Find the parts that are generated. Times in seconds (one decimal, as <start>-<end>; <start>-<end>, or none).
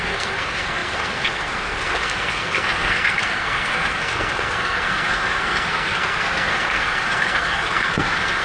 0.0-8.4